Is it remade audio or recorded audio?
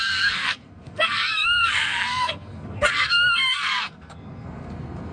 remade